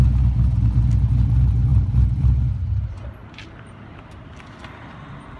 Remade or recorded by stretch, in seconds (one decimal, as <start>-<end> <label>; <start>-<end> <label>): 0.0-1.7 recorded; 1.7-3.8 remade; 3.8-5.4 recorded